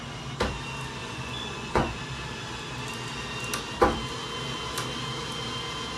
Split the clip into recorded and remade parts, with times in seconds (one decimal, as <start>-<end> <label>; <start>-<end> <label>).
0.0-1.0 recorded; 1.0-2.0 remade; 2.0-6.0 recorded